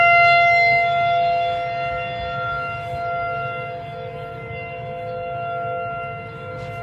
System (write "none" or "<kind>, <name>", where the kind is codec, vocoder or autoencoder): none